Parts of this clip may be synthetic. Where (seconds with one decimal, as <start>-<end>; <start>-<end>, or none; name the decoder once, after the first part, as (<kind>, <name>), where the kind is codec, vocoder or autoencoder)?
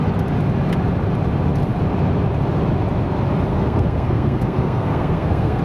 3.5-5.6 (codec, SNAC)